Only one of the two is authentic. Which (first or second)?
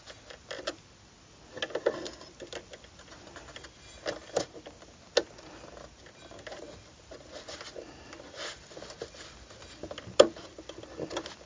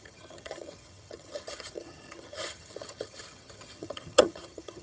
first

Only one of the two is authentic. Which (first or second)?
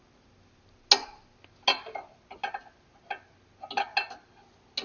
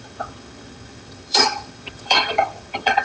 first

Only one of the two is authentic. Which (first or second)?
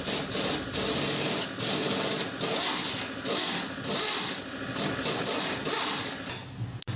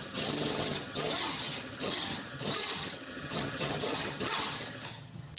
first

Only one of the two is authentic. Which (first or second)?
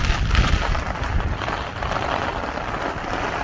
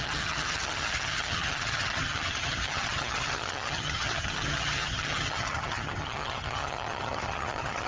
first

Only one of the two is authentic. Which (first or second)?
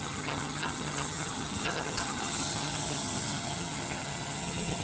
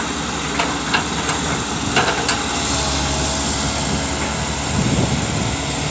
second